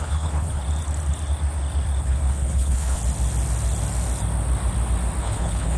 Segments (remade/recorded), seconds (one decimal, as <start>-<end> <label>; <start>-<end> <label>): 0.0-0.6 remade; 0.6-2.0 recorded; 2.0-3.0 remade; 3.0-5.2 recorded; 5.2-5.8 remade